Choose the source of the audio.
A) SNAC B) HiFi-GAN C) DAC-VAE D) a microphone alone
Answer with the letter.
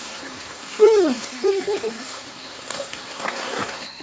A